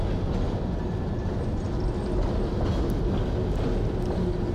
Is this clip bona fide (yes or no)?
yes